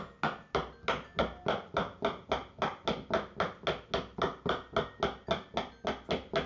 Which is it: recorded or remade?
recorded